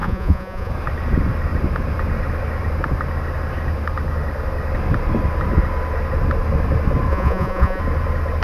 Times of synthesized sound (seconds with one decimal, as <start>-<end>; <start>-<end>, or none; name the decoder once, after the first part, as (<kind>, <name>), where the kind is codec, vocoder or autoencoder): 0.0-0.7 (vocoder, Vocos); 7.1-7.8

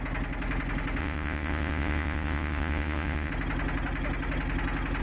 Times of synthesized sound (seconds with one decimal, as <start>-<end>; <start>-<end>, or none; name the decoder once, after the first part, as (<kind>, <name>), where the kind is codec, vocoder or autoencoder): 1.0-3.3 (vocoder, Vocos)

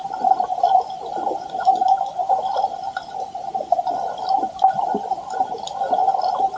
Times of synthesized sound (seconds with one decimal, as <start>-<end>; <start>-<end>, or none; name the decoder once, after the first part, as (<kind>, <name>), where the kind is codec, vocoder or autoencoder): 1.7-2.3 (vocoder, Vocos)

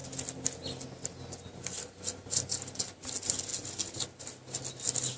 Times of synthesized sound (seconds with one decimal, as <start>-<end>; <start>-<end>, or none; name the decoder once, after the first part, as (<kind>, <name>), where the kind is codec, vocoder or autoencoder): none

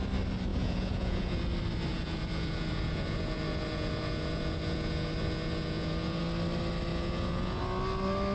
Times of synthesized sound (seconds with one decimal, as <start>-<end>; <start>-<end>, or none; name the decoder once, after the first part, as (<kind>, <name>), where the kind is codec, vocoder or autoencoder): 0.5-1.4 (vocoder, Vocos); 1.9-6.2; 6.9-7.6

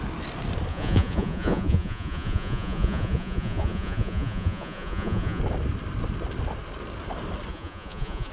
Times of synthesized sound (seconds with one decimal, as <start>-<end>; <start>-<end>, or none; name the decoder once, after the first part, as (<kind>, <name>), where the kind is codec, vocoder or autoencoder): 0.7-5.4 (vocoder, Vocos); 7.5-8.3

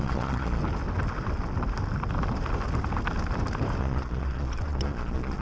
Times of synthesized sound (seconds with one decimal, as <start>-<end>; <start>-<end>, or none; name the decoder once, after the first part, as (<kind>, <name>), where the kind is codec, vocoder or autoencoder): 0.0-0.6 (vocoder, Vocos); 3.8-5.4